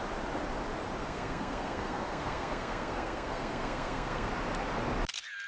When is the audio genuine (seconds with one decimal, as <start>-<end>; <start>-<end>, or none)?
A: 0.0-1.0; 4.3-5.5